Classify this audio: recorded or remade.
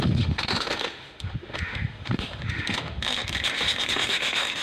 remade